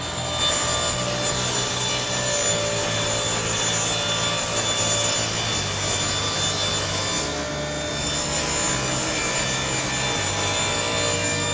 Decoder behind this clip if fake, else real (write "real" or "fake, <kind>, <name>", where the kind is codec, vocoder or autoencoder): real